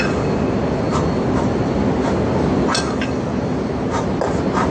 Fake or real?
real